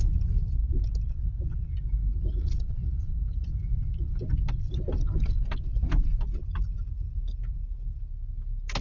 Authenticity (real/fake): real